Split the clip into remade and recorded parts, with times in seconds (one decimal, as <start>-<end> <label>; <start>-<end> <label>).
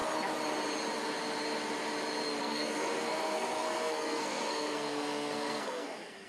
0.0-2.4 recorded; 2.4-6.3 remade